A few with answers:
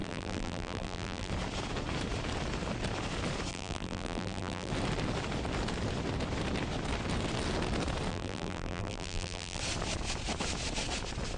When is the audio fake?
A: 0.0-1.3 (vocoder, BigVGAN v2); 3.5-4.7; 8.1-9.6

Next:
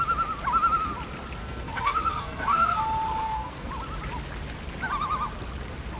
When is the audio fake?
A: 1.4-2.8 (codec, SNAC); 3.2-3.7